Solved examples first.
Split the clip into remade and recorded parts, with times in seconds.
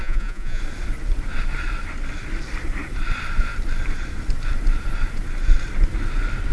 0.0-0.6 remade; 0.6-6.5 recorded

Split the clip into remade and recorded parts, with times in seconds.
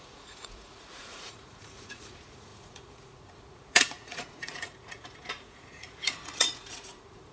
0.0-7.3 remade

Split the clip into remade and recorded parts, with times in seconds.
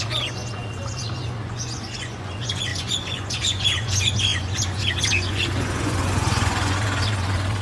0.0-7.6 remade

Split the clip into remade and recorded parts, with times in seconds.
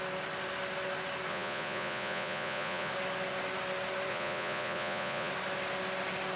0.0-1.3 recorded; 1.3-2.9 remade; 2.9-4.1 recorded; 4.1-5.3 remade; 5.3-6.4 recorded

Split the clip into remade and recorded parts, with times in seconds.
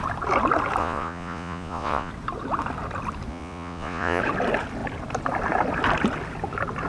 0.0-0.8 recorded; 0.8-2.1 remade; 2.1-3.3 recorded; 3.3-4.2 remade; 4.2-6.9 recorded